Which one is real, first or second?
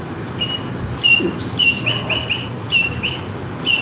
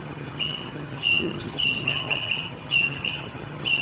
first